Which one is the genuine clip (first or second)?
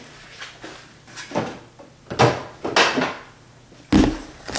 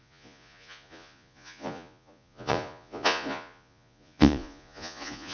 first